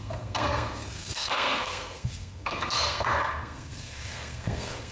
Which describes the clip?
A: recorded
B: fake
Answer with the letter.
B